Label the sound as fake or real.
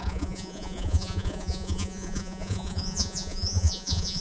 fake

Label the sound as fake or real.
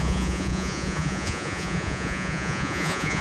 fake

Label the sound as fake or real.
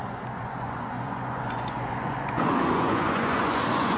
fake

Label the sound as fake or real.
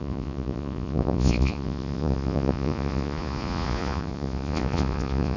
fake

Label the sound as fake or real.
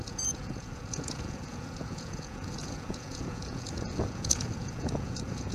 fake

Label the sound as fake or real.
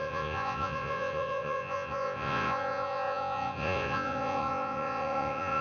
fake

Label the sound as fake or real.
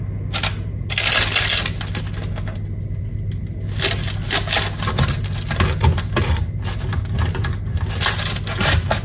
real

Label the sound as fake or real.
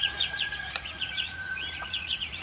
fake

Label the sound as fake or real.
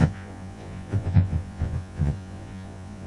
fake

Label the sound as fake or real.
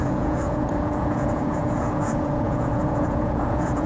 fake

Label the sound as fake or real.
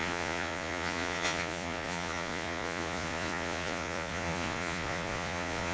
fake